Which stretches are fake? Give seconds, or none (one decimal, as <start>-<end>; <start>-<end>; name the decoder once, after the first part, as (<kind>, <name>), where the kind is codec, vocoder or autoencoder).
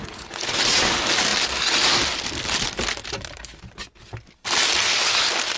0.0-0.5 (vocoder, Vocos)